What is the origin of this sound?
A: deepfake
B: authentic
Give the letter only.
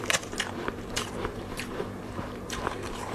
A